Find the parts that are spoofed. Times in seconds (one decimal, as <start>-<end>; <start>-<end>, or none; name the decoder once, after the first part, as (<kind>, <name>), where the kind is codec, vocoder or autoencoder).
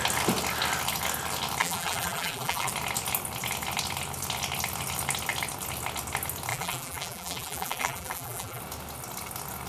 1.6-2.7 (vocoder, BigVGAN v2); 6.5-8.6